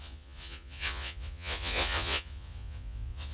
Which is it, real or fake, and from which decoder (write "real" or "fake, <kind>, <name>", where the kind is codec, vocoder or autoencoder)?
fake, vocoder, Vocos